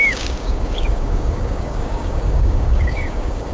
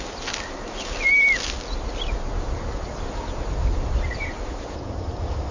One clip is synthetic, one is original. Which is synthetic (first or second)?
first